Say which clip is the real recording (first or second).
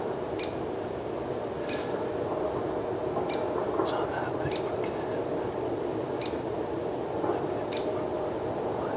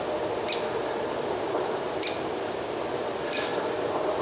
first